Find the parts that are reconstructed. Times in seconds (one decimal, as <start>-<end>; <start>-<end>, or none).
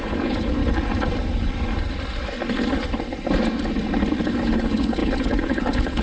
0.0-0.6; 4.2-6.0